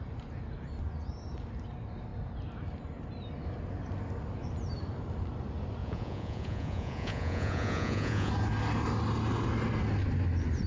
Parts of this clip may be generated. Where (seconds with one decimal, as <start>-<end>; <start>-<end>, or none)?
5.8-8.3